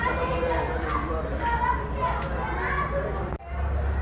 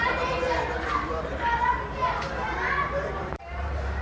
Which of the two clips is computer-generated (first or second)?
second